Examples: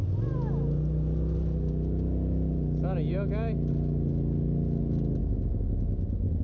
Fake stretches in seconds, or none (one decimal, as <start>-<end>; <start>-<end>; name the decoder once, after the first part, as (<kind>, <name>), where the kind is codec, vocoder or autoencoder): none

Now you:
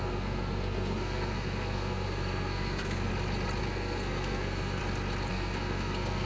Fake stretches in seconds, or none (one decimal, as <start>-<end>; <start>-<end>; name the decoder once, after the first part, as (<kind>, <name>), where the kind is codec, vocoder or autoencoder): 0.0-3.1 (codec, SNAC); 3.6-4.8; 5.3-6.3

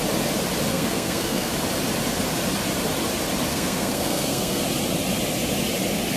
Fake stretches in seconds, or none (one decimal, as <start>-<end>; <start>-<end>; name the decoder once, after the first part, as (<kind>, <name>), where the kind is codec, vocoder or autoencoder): 0.7-1.5 (codec, SNAC); 3.5-4.6

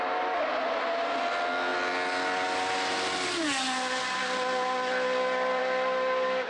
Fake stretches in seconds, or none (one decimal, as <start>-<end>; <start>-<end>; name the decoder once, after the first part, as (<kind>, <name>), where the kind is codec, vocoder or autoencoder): none

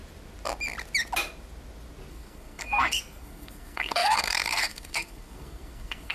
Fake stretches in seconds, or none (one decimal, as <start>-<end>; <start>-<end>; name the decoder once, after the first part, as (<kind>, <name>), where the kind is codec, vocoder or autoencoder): 2.1-6.1 (codec, SNAC)